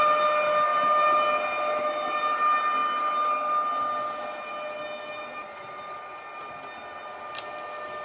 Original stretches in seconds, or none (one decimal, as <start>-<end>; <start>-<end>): 0.0-8.0